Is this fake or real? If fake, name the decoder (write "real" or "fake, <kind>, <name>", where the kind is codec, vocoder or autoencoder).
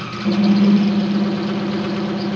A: real